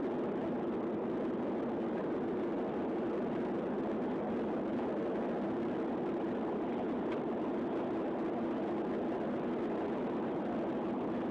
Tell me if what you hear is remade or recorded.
recorded